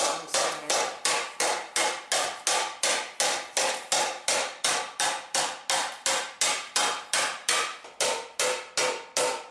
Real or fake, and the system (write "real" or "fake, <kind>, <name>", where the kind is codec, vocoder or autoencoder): real